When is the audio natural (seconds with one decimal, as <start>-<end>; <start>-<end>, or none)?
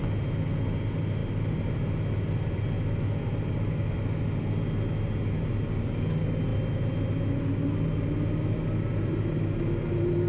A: 0.0-10.3